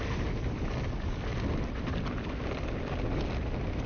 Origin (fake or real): real